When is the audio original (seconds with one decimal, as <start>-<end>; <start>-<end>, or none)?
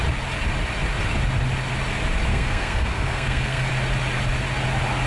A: 0.0-2.3; 3.7-5.1